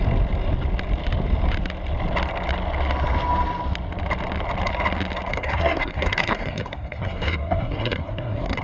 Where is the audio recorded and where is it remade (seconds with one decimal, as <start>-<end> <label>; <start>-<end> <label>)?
0.0-5.3 recorded; 5.3-8.6 remade